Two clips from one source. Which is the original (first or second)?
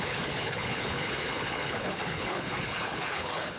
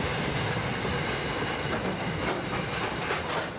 second